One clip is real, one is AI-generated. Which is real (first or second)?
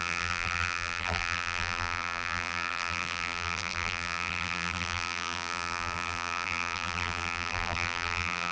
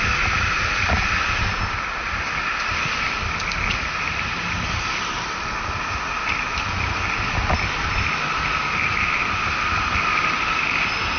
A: second